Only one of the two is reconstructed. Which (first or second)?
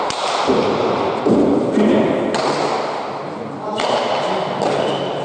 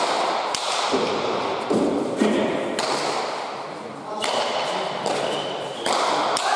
second